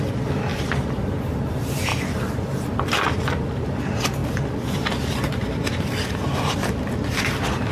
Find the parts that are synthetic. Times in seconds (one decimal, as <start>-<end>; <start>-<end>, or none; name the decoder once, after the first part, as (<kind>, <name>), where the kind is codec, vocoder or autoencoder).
0.5-1.3 (vocoder, BigVGAN v2); 1.9-3.4; 4.2-5.1